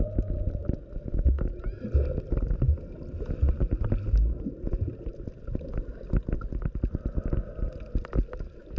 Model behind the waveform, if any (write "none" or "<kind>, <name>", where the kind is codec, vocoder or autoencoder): none